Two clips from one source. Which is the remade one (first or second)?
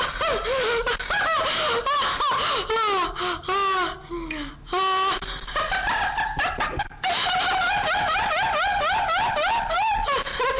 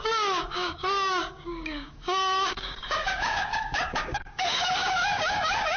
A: second